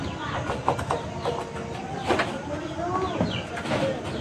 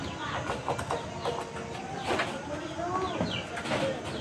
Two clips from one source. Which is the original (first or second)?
second